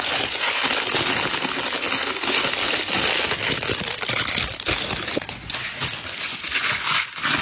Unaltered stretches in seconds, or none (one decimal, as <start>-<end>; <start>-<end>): 0.6-5.0